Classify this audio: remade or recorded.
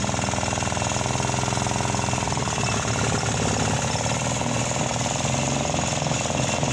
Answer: recorded